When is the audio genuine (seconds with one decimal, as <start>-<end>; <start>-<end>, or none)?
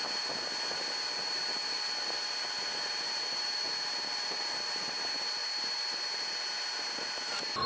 0.0-7.7